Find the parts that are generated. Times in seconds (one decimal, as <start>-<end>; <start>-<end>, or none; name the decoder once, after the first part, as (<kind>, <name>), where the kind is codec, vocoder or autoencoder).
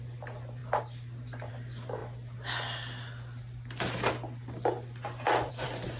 none